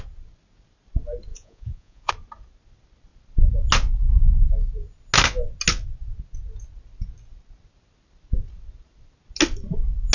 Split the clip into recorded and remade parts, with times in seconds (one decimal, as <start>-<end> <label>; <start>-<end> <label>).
0.0-1.3 recorded; 1.3-2.1 remade; 2.1-10.1 recorded